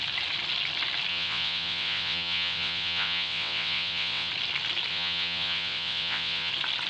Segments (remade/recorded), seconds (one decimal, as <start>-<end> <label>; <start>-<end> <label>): 0.0-1.1 recorded; 1.1-4.3 remade; 4.3-4.9 recorded; 4.9-6.5 remade; 6.5-6.9 recorded